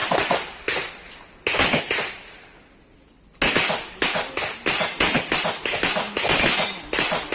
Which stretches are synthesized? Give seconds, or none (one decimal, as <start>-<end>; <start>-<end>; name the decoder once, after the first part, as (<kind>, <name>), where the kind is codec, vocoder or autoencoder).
none